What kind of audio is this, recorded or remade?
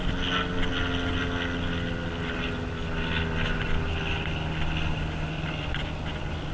recorded